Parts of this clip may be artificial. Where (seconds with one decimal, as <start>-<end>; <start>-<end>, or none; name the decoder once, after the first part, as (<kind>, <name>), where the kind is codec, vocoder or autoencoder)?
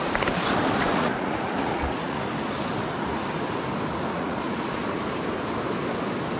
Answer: 0.8-2.3 (vocoder, Vocos); 4.1-5.0